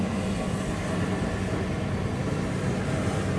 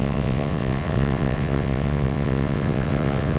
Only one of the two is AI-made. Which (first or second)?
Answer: second